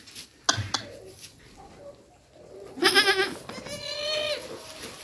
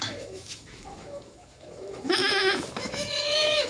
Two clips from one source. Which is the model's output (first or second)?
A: second